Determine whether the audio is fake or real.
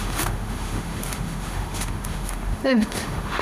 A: fake